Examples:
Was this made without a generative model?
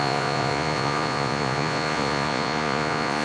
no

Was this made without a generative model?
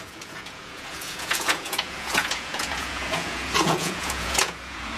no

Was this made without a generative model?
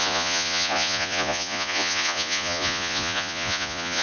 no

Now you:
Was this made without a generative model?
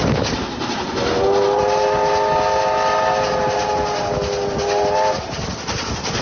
yes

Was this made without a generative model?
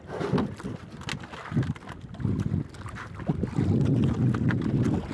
yes